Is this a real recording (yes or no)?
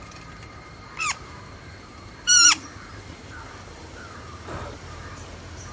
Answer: no